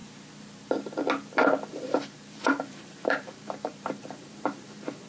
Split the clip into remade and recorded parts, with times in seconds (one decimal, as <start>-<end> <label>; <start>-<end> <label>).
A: 0.0-1.7 recorded; 1.7-5.1 remade